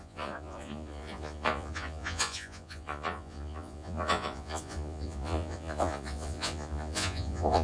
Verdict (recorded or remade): remade